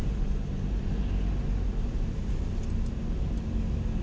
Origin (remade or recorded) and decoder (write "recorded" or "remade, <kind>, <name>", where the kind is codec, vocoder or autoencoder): recorded